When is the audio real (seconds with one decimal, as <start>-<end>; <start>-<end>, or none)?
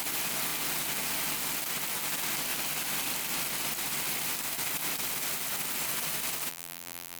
0.0-6.5